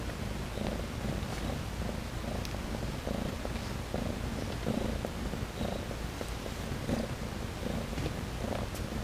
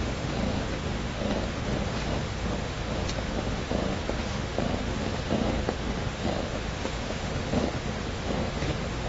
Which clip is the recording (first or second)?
first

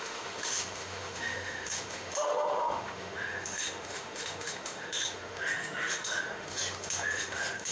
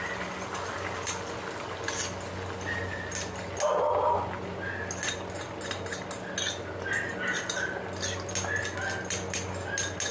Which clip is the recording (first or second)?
second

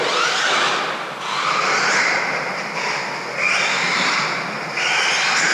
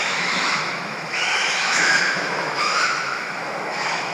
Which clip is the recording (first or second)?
first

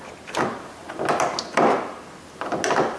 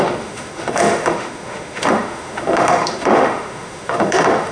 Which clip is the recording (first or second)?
first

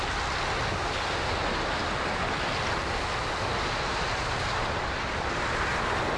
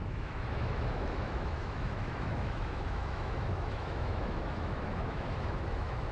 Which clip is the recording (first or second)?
first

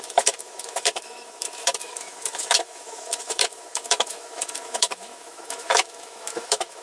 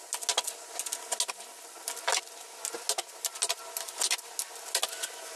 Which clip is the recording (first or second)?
second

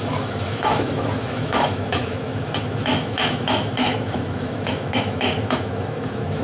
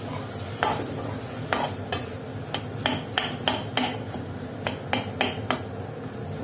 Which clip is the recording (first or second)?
second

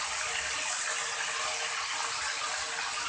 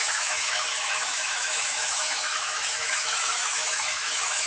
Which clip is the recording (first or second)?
first